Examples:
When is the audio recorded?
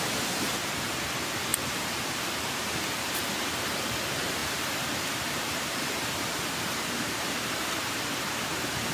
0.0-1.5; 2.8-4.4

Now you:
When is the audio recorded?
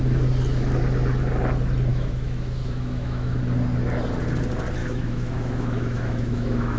0.0-1.9; 3.4-4.8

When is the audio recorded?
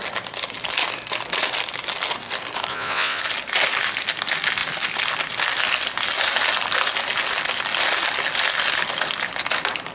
0.0-2.7; 3.2-9.9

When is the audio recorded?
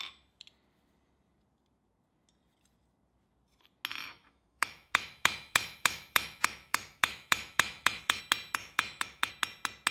0.0-3.9; 8.2-8.6; 9.3-9.9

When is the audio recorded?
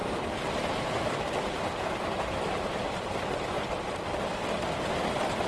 3.3-5.5